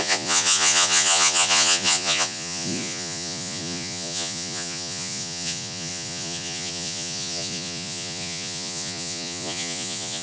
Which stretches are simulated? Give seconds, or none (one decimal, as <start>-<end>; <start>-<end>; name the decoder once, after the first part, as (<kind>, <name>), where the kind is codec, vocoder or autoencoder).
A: 0.0-10.2 (vocoder, Vocos)